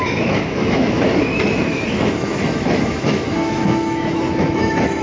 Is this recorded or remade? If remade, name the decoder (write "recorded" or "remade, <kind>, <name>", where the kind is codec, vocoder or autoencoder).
remade, autoencoder, DAC-VAE